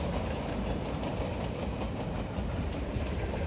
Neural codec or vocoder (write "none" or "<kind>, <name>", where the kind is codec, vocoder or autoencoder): none